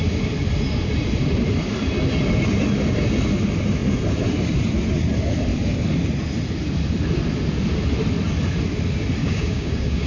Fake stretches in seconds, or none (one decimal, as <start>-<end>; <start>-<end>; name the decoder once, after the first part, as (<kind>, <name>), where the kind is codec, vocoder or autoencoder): 9.2-10.1 (codec, DAC)